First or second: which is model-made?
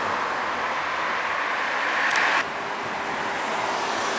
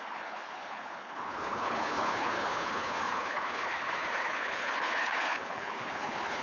second